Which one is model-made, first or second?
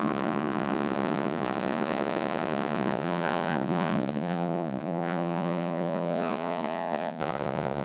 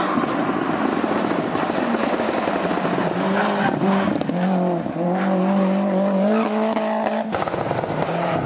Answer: first